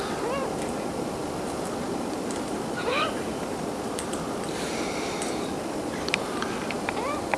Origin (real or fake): fake